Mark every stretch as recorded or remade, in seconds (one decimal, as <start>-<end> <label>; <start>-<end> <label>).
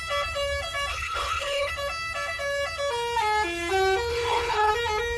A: 0.0-0.9 recorded; 0.9-1.7 remade; 1.7-4.1 recorded; 4.1-4.7 remade; 4.7-5.2 recorded